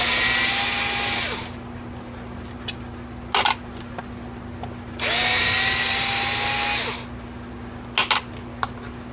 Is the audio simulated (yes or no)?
no